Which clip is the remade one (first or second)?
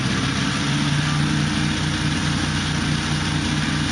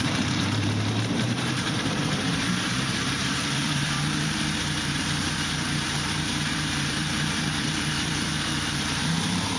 second